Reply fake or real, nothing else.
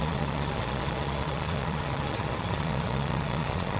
fake